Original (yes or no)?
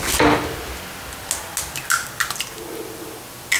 yes